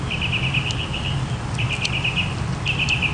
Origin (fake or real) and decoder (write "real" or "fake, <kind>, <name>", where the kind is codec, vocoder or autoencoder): real